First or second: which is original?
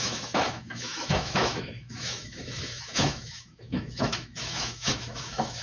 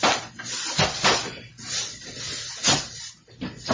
second